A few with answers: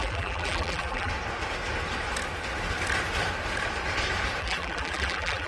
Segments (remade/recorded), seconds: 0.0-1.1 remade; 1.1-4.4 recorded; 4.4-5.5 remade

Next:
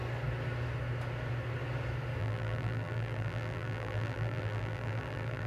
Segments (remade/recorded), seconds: 0.0-2.2 recorded; 2.2-5.5 remade

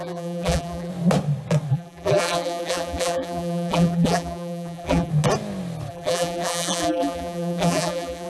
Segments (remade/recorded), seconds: 0.0-0.9 remade; 0.9-1.7 recorded; 1.7-5.1 remade; 5.1-5.9 recorded; 5.9-8.3 remade

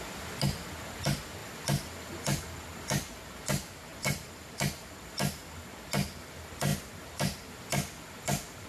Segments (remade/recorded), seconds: 0.0-1.4 recorded; 1.4-2.1 remade; 2.1-3.9 recorded; 3.9-5.6 remade; 5.6-6.7 recorded; 6.7-7.5 remade; 7.5-8.7 recorded

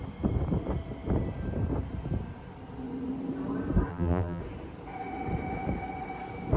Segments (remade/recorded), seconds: 0.0-3.9 recorded; 3.9-4.4 remade; 4.4-6.6 recorded

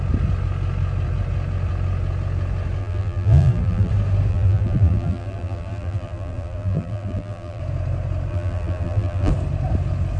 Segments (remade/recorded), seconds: 0.0-2.8 recorded; 2.8-3.9 remade; 3.9-4.3 recorded; 4.3-7.6 remade; 7.6-8.3 recorded; 8.3-9.3 remade; 9.3-10.2 recorded

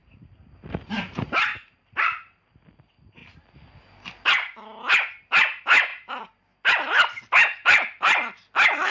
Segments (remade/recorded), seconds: 0.0-2.5 remade; 2.5-5.9 recorded; 5.9-6.4 remade; 6.4-7.6 recorded; 7.6-8.4 remade; 8.4-8.9 recorded

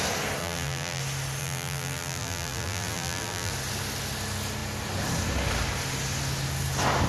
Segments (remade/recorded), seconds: 0.0-0.4 recorded; 0.4-1.0 remade; 1.0-1.4 recorded; 1.4-3.5 remade; 3.5-7.1 recorded